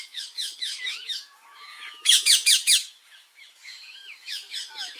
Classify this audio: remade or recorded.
remade